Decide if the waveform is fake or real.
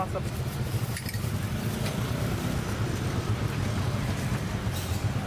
fake